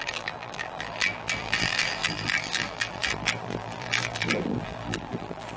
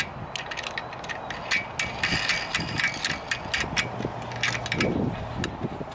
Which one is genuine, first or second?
second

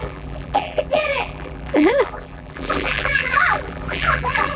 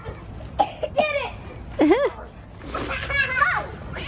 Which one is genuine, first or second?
second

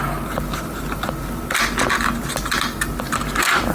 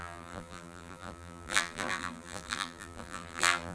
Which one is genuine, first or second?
first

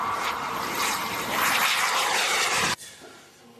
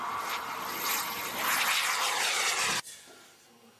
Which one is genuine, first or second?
second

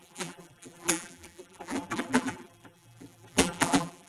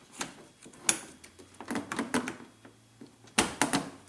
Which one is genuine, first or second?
second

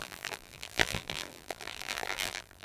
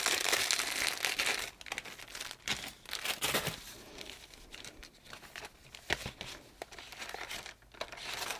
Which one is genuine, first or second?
second